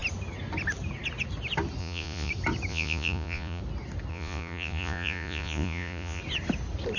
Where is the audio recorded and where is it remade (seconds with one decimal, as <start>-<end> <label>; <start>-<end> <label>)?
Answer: 0.0-1.8 recorded; 1.8-2.3 remade; 2.3-2.7 recorded; 2.7-3.6 remade; 3.6-4.1 recorded; 4.1-6.2 remade; 6.2-7.0 recorded